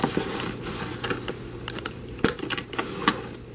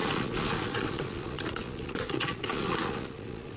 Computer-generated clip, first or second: second